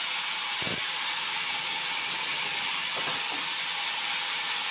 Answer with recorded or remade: recorded